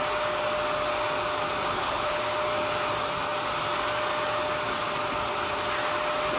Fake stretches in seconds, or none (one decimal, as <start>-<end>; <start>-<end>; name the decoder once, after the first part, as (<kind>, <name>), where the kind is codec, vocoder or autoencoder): 1.7-2.2 (codec, HILCodec)

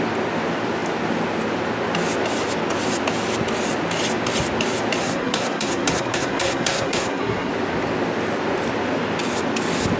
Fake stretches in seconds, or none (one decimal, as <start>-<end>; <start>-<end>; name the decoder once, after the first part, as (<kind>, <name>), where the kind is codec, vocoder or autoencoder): 5.0-7.5 (codec, SNAC)

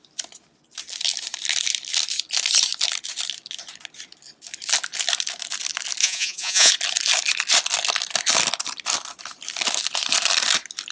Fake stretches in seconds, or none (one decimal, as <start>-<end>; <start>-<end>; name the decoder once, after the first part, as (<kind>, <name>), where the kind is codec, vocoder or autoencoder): 6.0-6.7 (vocoder, Vocos)

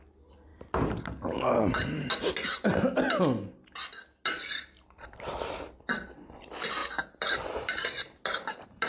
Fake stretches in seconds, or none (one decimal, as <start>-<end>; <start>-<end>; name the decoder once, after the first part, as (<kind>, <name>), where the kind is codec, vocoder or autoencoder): none

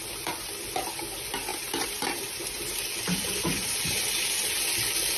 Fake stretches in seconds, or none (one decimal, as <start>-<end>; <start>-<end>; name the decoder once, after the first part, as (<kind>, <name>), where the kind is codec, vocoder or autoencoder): 0.0-0.5 (vocoder, BigVGAN v2); 1.5-4.6

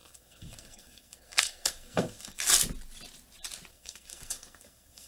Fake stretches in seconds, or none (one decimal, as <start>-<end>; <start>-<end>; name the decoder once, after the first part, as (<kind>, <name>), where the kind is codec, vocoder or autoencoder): 0.0-2.4 (codec, SNAC); 3.7-5.1

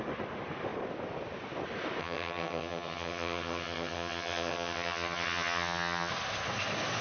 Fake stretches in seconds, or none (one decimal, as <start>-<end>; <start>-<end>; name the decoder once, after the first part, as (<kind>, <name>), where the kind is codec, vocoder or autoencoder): 2.0-6.1 (vocoder, HiFi-GAN)